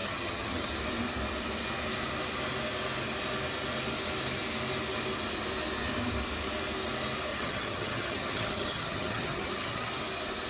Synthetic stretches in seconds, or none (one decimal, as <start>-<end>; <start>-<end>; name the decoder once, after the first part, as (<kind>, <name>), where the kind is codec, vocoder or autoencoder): 0.0-0.7 (vocoder, HiFi-GAN); 7.3-9.9